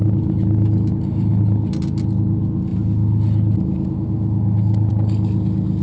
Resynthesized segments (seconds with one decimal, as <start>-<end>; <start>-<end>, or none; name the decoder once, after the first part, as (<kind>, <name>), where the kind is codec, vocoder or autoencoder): none